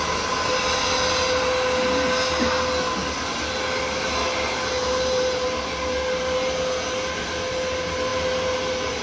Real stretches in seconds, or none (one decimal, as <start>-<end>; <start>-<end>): 0.0-9.0